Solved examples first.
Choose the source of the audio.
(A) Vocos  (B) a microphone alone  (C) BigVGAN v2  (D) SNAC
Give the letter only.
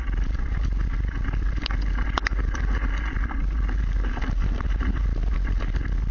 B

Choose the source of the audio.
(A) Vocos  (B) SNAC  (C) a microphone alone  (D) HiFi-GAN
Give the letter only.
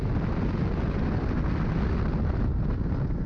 C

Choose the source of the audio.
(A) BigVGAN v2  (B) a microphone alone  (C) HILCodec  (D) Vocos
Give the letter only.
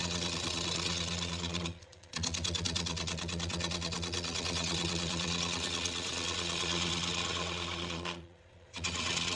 D